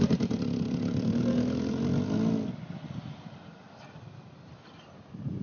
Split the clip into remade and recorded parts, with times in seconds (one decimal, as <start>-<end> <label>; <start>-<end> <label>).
0.0-1.9 remade; 1.9-5.0 recorded; 5.0-5.4 remade